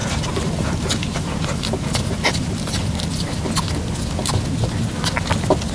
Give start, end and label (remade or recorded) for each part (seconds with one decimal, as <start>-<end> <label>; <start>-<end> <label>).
0.0-3.4 remade; 3.4-5.7 recorded